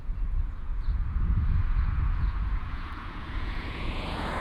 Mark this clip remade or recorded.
remade